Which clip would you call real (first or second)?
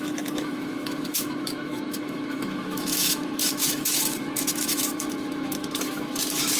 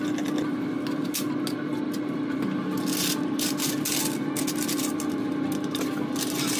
second